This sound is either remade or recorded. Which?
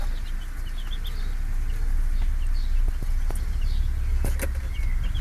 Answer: recorded